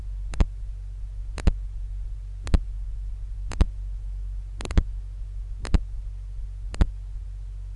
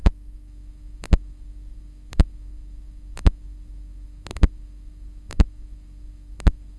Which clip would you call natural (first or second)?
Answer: first